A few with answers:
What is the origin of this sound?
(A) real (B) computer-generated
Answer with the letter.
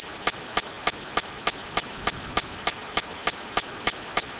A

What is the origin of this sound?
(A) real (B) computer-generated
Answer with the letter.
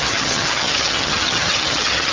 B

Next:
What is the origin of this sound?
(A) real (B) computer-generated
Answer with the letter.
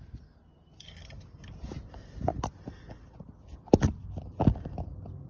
A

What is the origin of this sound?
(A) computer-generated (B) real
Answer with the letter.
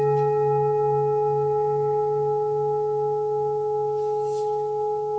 B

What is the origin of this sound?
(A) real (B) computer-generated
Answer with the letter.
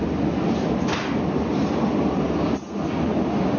A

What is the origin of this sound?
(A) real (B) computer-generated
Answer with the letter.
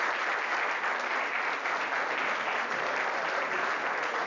A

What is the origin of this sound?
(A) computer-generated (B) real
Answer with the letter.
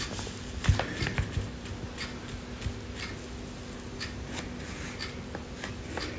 B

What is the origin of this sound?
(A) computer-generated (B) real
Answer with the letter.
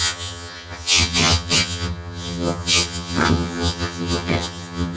A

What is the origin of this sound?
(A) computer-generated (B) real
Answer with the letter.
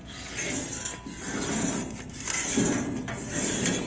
B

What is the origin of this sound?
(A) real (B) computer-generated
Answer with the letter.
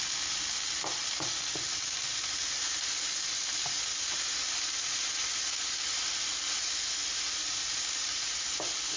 A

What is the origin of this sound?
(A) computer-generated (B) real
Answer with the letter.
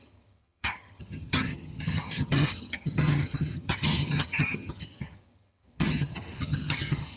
A